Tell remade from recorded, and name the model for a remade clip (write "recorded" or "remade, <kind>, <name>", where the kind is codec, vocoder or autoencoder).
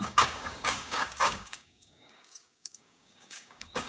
remade, codec, DAC